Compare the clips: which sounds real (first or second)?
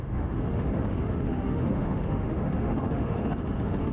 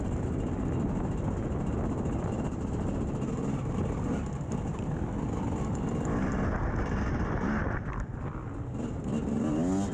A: second